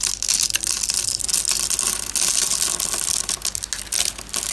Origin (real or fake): real